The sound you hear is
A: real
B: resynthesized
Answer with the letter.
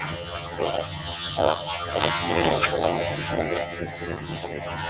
B